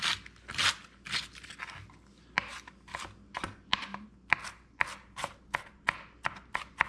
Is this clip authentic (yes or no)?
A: yes